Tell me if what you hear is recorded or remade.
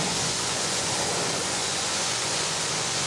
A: remade